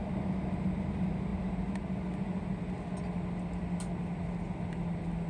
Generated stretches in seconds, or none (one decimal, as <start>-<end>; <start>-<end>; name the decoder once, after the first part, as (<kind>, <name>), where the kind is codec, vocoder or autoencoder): none